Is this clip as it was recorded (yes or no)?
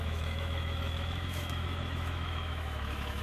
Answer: no